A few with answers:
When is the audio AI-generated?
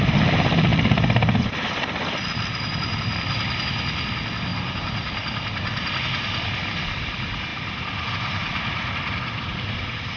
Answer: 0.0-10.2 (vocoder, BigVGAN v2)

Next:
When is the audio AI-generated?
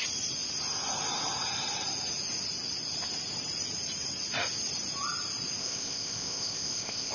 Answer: 5.6-7.1 (codec, ZipCodec)